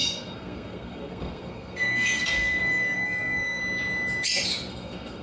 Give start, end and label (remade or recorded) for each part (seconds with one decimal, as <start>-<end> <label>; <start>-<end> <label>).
0.0-3.6 remade; 3.6-4.7 recorded; 4.7-5.2 remade